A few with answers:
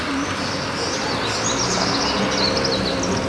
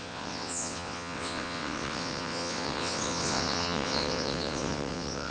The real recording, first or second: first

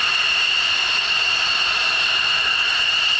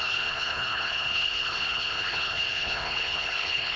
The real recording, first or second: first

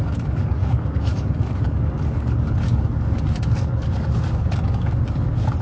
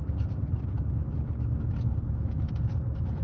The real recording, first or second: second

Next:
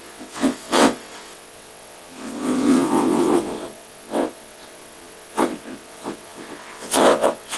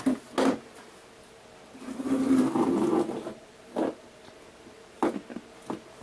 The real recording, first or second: second